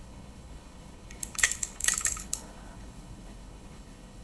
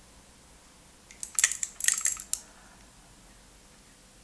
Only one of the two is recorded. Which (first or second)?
second